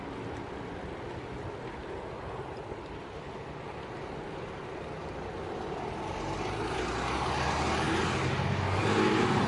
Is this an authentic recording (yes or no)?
yes